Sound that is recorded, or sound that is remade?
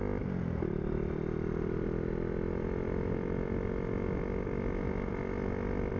recorded